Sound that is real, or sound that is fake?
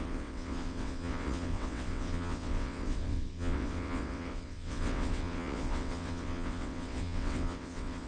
fake